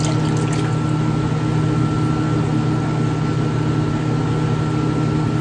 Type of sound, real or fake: real